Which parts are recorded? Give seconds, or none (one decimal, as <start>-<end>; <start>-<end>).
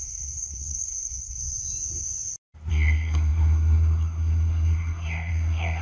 1.4-2.7